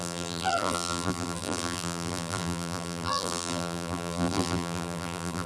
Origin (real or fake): fake